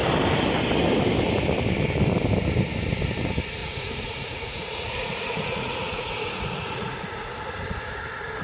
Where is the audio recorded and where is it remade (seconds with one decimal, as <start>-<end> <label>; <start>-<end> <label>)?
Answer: 0.0-3.6 recorded; 3.6-7.3 remade; 7.3-8.4 recorded